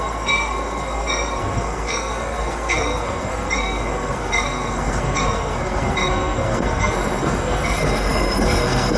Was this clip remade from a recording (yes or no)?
yes